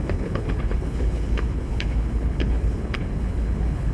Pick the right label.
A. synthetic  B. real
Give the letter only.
A